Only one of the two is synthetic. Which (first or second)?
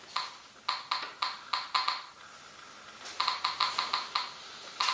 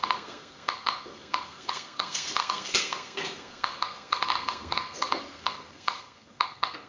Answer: second